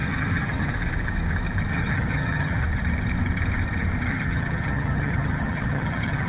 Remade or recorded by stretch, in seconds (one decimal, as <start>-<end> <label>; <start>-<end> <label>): 0.0-0.7 remade; 0.7-1.7 recorded; 1.7-2.6 remade; 2.6-4.1 recorded; 4.1-6.3 remade